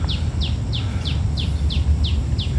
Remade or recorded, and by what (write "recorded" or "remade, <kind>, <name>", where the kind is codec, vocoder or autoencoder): recorded